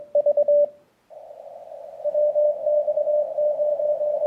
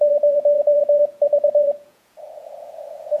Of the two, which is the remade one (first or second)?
second